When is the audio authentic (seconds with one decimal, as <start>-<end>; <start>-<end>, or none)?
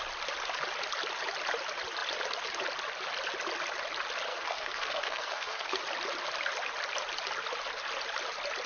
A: 0.0-4.3; 5.8-8.7